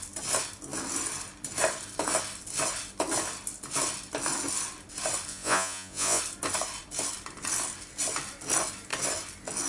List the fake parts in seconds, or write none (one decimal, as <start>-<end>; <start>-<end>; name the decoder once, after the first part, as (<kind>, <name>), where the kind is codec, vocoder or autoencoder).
5.3-6.2 (vocoder, Vocos)